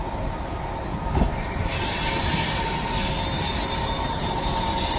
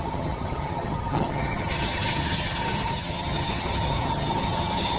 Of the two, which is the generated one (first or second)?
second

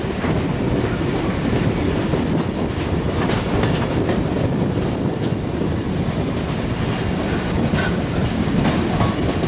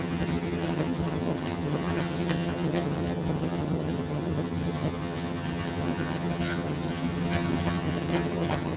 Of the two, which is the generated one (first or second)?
second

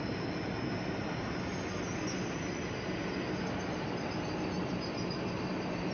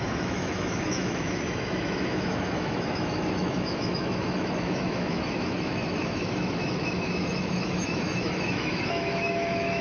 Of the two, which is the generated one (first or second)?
second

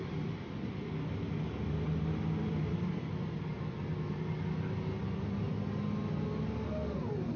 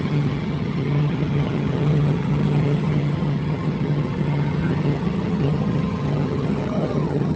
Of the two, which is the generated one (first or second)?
second